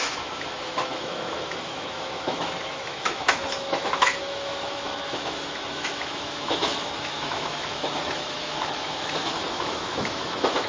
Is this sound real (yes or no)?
no